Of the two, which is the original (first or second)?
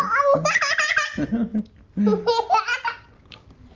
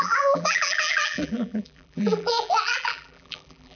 first